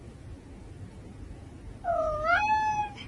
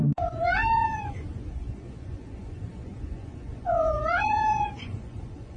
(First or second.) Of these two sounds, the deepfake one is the second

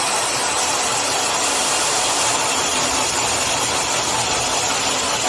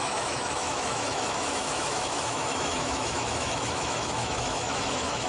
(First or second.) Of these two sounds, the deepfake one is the second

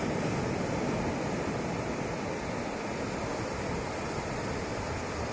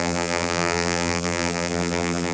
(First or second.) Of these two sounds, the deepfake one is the second